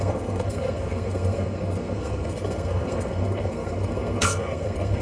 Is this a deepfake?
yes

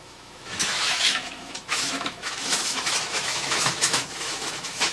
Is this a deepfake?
yes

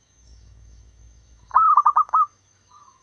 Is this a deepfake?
yes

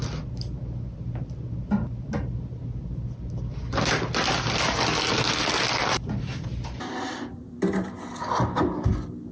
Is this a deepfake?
no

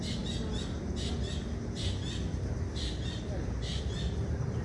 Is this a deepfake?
no